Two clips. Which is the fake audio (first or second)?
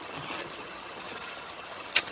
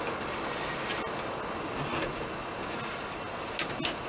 first